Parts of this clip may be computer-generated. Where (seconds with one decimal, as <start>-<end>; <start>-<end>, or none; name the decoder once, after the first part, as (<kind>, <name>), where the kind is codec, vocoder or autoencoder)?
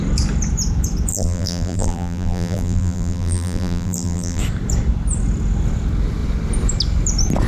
1.1-4.4 (vocoder, BigVGAN v2)